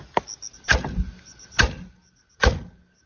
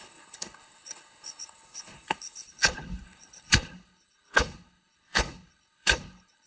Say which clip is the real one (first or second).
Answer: first